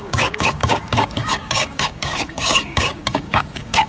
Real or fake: fake